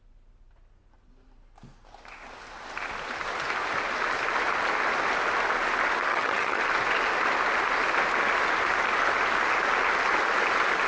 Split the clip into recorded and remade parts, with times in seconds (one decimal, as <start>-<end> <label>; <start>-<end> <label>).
0.0-6.1 recorded; 6.1-6.6 remade; 6.6-10.9 recorded

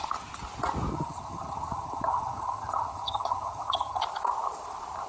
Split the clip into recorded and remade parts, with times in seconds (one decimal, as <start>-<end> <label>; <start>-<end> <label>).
0.0-0.9 recorded; 0.9-4.0 remade; 4.0-5.1 recorded

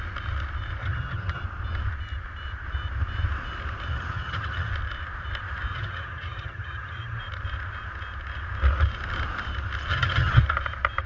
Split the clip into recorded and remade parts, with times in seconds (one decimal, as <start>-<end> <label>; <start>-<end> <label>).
0.0-0.8 recorded; 0.8-1.4 remade; 1.4-3.9 recorded; 3.9-4.7 remade; 4.7-5.7 recorded; 5.7-7.2 remade; 7.2-9.9 recorded; 9.9-10.4 remade; 10.4-11.1 recorded

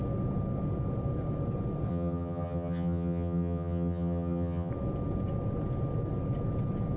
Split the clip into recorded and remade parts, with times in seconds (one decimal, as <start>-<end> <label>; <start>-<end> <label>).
0.0-1.9 recorded; 1.9-4.7 remade; 4.7-7.0 recorded

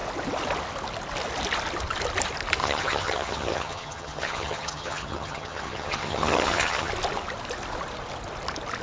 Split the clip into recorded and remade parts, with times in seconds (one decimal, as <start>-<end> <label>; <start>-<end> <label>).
0.0-2.6 recorded; 2.6-6.9 remade; 6.9-8.8 recorded